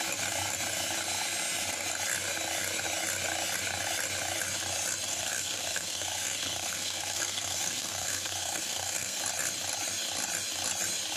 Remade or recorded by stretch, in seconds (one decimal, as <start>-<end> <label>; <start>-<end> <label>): 0.0-5.1 recorded; 5.1-9.2 remade; 9.2-11.2 recorded